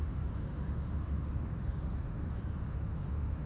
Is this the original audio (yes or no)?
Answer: no